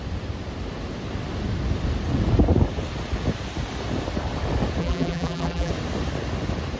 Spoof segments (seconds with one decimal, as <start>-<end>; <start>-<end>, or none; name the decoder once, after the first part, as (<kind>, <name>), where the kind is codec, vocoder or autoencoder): 4.8-5.7 (vocoder, BigVGAN v2)